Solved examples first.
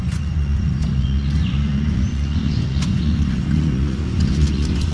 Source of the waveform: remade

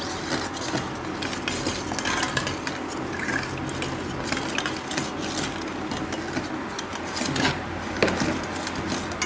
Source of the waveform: recorded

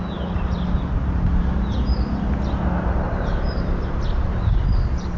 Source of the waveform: recorded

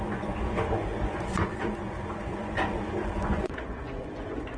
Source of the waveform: remade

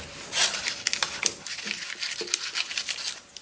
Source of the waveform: recorded